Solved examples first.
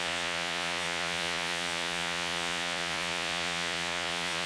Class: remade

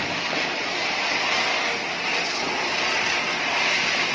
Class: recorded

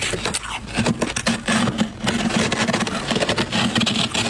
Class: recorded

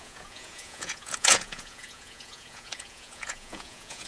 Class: remade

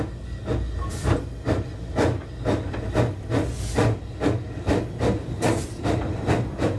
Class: recorded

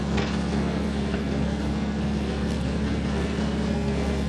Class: remade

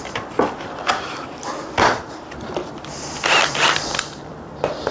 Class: remade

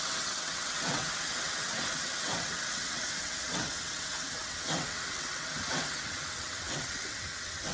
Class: remade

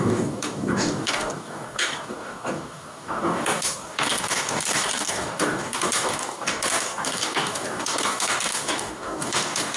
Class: remade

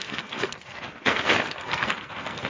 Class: remade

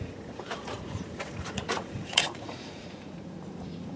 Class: remade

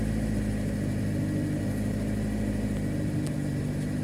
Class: recorded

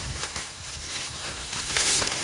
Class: remade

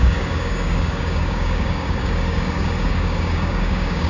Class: remade